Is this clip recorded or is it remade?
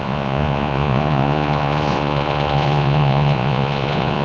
remade